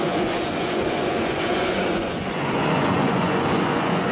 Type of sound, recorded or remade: remade